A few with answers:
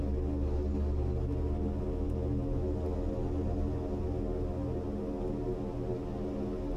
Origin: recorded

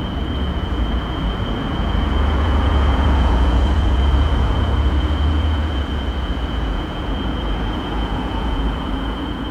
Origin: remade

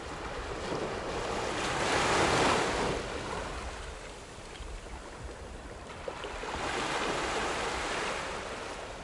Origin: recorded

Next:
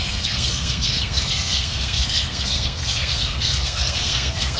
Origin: remade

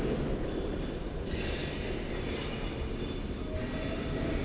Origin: recorded